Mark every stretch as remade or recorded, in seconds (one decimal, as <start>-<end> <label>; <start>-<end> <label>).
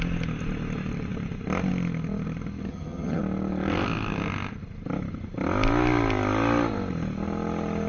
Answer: 0.0-2.7 recorded; 2.7-3.2 remade; 3.2-7.9 recorded